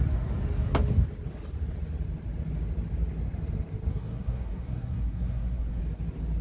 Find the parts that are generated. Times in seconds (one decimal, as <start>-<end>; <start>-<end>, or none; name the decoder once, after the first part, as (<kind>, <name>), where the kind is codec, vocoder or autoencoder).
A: 3.9-5.8 (codec, SNAC)